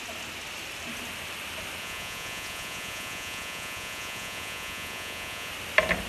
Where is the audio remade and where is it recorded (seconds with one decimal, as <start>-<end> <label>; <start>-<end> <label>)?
0.0-1.8 recorded; 1.8-5.5 remade; 5.5-6.1 recorded